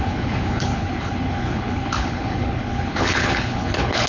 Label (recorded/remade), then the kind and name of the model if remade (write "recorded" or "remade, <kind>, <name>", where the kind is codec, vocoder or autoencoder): remade, codec, HILCodec